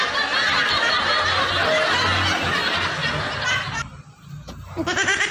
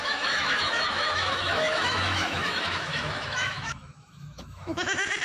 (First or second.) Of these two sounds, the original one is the first